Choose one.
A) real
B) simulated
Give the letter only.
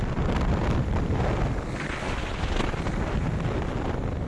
A